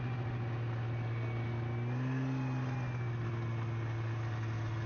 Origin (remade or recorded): recorded